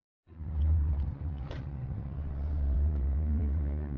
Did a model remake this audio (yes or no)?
yes